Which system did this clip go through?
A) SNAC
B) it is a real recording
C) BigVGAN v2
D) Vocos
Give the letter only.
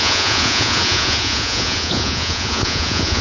D